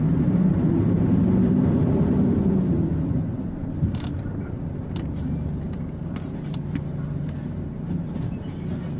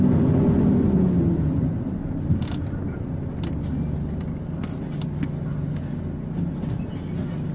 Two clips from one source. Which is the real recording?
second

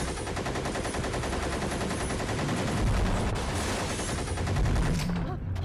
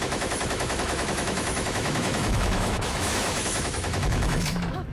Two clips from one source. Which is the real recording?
first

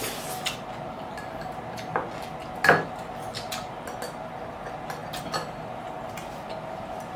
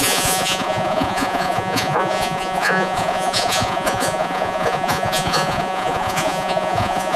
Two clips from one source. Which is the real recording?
first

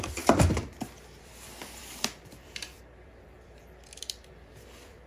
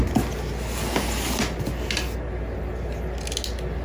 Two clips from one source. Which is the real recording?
second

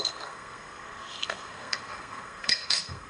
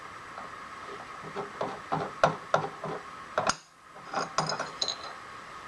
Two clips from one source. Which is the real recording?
second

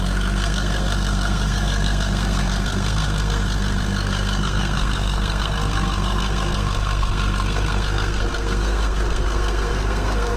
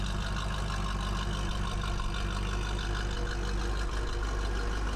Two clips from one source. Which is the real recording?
second